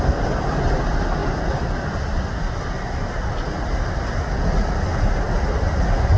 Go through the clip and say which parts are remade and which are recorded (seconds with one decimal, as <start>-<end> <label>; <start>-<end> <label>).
0.0-6.2 recorded